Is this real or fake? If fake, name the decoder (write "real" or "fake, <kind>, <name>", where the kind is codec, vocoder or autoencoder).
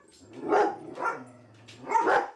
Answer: real